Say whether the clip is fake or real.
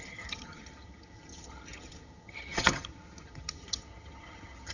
fake